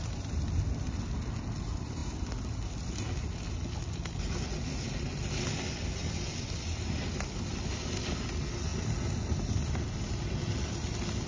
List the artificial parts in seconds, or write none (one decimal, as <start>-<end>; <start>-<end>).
none